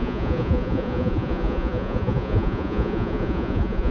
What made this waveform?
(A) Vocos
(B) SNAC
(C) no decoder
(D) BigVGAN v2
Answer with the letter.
A